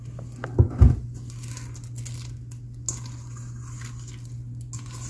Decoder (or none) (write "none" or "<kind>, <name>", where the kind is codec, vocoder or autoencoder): none